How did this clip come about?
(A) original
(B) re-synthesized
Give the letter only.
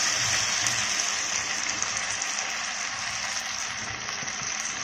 A